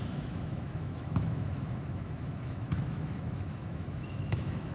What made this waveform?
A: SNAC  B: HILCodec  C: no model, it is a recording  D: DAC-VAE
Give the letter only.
D